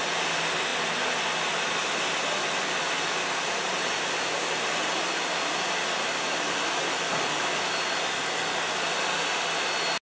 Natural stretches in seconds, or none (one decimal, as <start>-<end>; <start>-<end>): 0.0-10.1